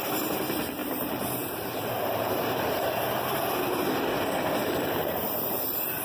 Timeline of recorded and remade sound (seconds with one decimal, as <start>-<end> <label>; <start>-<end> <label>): 0.0-0.8 recorded; 0.8-3.5 remade; 3.5-4.6 recorded; 4.6-6.0 remade